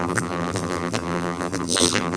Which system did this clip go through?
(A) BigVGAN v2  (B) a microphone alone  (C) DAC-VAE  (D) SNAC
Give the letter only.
A